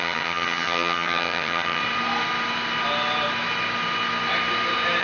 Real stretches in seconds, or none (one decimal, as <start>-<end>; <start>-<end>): 1.8-5.0